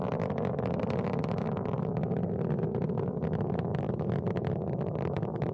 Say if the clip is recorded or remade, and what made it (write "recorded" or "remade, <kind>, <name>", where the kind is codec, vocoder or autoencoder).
recorded